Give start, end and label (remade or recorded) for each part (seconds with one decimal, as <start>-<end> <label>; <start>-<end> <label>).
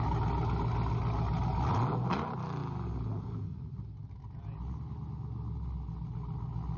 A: 0.0-6.8 recorded